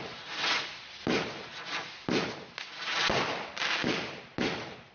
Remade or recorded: recorded